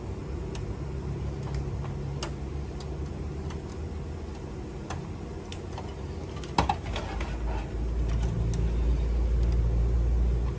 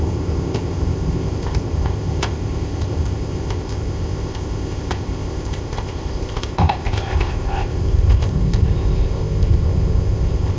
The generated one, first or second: second